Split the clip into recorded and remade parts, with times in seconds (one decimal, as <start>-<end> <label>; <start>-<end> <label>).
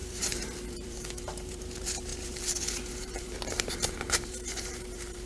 0.0-5.3 remade